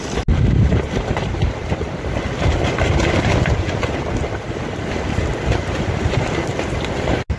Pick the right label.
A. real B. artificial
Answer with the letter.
A